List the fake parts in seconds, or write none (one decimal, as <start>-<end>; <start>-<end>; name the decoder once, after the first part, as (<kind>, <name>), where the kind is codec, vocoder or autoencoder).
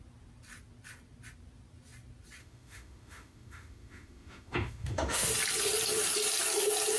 2.4-5.3 (autoencoder, DAC-VAE)